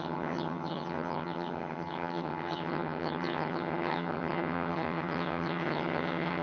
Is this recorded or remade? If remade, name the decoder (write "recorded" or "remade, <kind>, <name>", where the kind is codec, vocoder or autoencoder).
remade, vocoder, HiFi-GAN